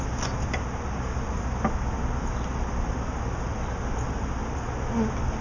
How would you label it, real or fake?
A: real